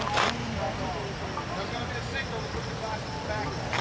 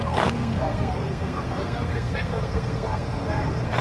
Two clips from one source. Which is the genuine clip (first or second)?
first